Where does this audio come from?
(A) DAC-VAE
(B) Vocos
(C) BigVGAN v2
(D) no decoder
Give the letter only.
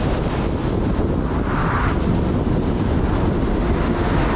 D